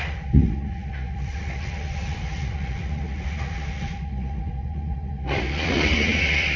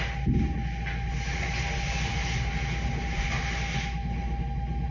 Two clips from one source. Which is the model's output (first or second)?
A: first